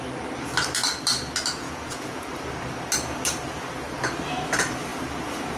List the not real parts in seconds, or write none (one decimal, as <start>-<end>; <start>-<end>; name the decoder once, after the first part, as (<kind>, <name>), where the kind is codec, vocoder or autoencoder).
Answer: 1.6-2.3 (vocoder, Vocos)